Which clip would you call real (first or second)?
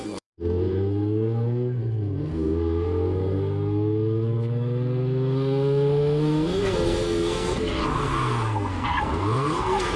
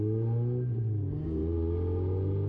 second